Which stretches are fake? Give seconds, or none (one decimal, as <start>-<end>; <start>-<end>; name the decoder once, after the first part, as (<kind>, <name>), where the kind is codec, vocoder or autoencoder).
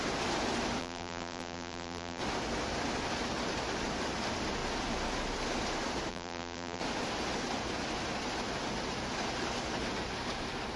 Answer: 0.8-2.2 (vocoder, BigVGAN v2); 6.1-6.8